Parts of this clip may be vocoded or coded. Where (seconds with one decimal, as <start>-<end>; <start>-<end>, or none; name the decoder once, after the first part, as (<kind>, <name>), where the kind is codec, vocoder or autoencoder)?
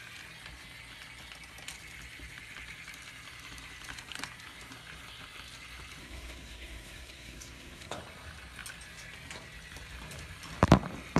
6.0-8.0 (codec, SNAC)